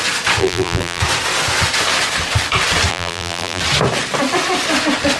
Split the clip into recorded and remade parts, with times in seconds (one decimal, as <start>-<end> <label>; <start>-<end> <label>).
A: 0.0-0.4 recorded; 0.4-1.0 remade; 1.0-2.9 recorded; 2.9-3.6 remade; 3.6-5.2 recorded